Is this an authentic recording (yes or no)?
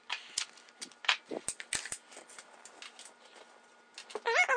yes